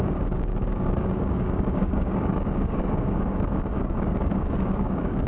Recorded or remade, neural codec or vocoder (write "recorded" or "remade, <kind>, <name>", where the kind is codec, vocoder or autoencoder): remade, codec, DAC